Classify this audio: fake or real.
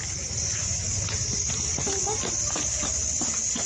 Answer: real